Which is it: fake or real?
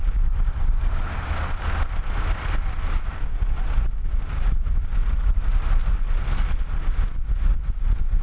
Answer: real